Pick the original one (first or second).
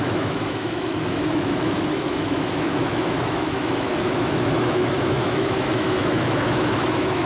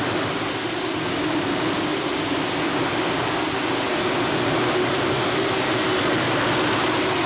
second